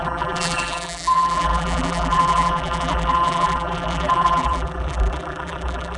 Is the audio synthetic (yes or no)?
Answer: yes